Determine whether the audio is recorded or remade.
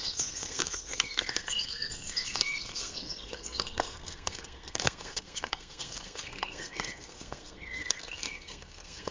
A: remade